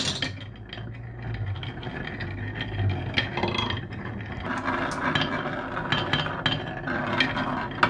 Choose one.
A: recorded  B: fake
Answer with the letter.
A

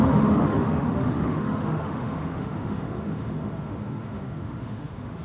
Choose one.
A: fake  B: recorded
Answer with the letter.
A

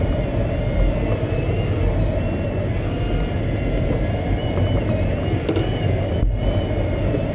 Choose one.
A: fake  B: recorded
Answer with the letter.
B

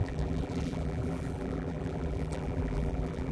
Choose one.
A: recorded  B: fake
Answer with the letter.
B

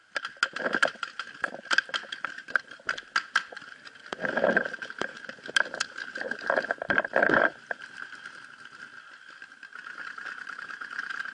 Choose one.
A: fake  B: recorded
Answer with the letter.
B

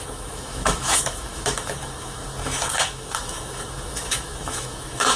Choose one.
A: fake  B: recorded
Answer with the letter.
A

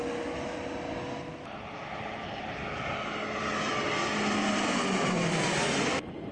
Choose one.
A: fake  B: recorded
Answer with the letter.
B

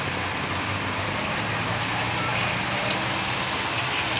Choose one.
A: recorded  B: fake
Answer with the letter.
A